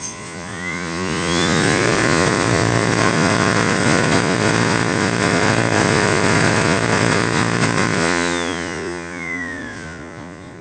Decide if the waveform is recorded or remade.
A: remade